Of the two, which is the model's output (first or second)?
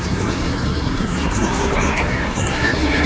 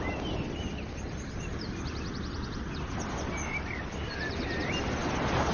first